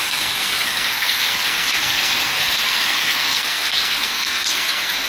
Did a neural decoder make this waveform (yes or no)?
yes